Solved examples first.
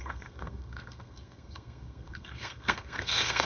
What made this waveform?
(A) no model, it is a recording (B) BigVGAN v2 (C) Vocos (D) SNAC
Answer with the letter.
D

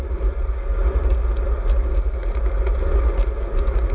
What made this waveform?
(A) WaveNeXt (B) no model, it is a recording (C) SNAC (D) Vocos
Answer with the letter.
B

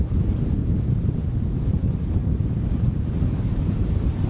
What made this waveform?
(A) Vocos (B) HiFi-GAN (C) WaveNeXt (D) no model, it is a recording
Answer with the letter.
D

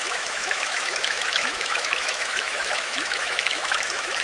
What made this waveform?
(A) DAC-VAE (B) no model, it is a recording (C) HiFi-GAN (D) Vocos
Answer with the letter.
A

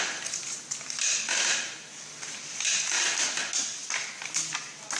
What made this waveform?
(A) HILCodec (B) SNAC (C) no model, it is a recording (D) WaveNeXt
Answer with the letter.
C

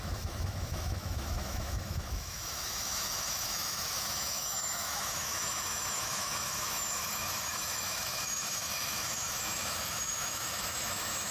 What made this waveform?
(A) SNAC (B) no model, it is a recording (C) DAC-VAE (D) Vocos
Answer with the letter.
C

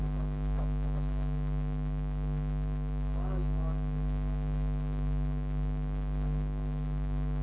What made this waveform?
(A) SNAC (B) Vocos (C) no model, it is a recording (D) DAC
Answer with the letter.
D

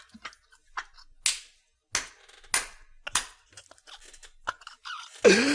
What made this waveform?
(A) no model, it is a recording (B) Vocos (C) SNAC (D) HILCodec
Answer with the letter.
A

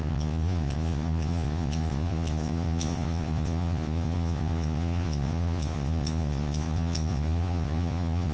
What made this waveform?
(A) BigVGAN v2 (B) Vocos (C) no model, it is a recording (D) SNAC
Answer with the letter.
B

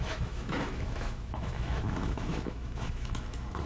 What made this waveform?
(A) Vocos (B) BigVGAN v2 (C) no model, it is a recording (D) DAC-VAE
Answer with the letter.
D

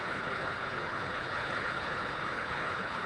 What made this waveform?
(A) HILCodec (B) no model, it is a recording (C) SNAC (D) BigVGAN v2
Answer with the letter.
A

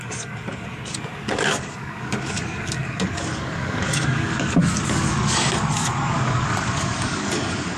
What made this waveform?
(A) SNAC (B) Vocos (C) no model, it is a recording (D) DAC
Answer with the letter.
D